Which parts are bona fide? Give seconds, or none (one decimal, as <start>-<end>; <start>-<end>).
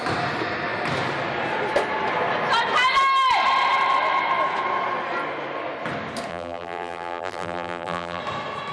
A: 0.0-6.3; 8.2-8.7